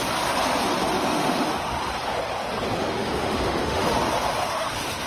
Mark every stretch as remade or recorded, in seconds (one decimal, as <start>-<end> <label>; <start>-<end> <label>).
0.0-1.1 recorded; 1.1-1.8 remade; 1.8-2.8 recorded; 2.8-3.9 remade; 3.9-4.4 recorded; 4.4-5.1 remade